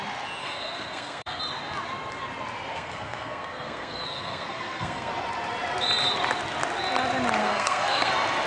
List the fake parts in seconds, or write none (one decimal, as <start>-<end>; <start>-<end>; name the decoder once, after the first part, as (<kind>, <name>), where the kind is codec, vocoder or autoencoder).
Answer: 0.4-1.4 (codec, SNAC); 2.7-5.1; 7.4-8.1